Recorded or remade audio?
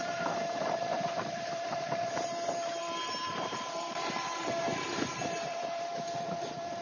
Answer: remade